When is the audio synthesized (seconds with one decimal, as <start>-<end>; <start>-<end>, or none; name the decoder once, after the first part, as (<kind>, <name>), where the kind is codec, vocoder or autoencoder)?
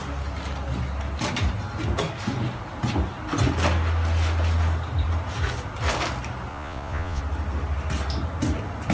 6.5-7.2 (vocoder, Vocos)